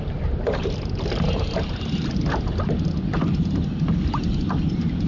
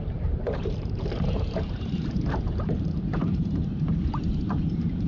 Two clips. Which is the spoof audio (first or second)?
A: second